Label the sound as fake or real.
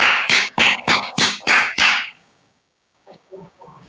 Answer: fake